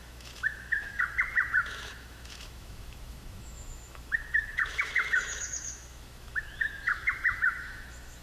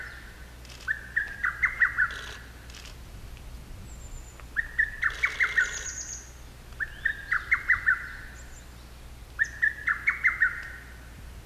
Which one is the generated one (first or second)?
first